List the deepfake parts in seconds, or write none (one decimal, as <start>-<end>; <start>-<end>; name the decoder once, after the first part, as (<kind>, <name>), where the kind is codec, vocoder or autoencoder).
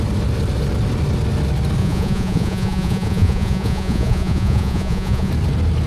1.8-5.3 (vocoder, Vocos)